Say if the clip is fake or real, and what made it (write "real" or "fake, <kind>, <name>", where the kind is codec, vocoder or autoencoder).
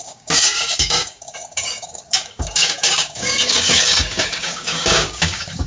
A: fake, codec, DAC